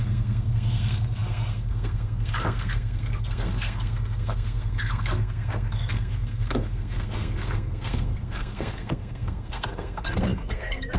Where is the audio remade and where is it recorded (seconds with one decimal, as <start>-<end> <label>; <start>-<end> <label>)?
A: 0.0-11.0 remade